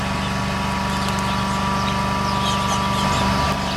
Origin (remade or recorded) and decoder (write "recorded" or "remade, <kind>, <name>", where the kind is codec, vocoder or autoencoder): remade, vocoder, BigVGAN v2